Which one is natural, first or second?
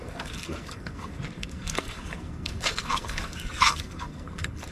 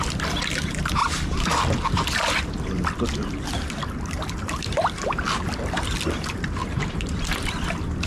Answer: second